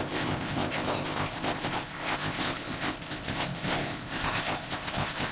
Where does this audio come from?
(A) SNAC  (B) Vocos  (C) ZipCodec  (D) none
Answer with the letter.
C